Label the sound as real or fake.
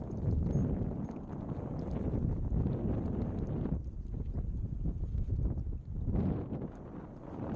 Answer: real